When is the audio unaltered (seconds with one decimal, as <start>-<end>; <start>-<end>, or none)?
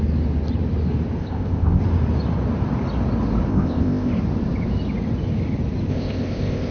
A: 0.0-1.2; 1.8-3.5; 4.1-5.9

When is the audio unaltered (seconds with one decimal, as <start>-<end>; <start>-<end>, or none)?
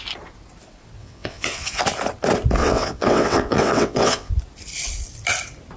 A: 0.0-1.0; 1.8-2.6; 4.3-5.8